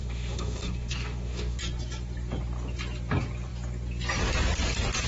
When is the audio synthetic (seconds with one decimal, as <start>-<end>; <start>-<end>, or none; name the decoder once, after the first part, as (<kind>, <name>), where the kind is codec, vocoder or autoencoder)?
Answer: 0.0-1.6 (autoencoder, DAC-VAE)